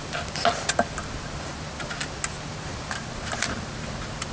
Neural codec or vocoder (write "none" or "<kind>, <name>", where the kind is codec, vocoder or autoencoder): none